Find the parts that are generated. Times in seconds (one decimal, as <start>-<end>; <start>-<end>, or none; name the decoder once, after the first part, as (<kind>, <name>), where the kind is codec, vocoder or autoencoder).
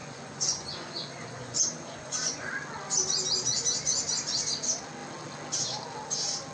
0.0-2.5 (vocoder, Vocos)